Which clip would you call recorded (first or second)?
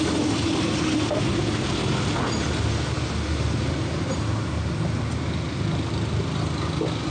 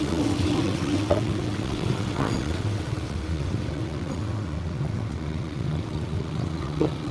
first